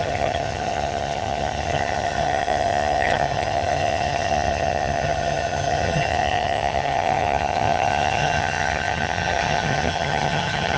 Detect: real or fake fake